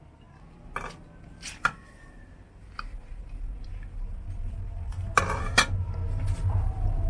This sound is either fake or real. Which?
real